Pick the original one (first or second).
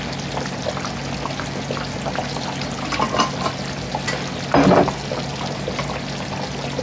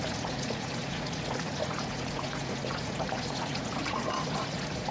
first